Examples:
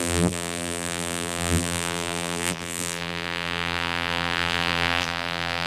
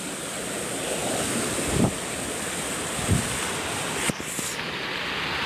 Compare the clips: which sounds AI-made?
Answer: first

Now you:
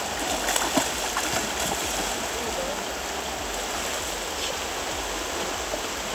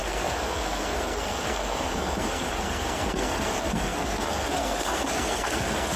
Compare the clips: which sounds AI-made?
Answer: second